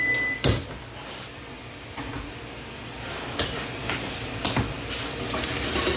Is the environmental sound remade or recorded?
recorded